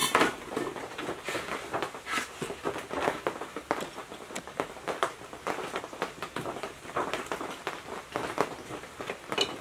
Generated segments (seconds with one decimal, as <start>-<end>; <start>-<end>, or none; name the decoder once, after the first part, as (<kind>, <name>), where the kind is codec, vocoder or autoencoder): none